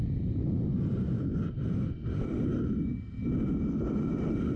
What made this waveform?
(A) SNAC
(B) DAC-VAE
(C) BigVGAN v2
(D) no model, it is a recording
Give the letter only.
D